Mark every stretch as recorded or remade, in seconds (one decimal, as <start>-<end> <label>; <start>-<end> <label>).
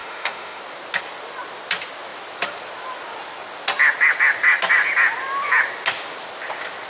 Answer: 0.0-0.6 remade; 0.6-6.9 recorded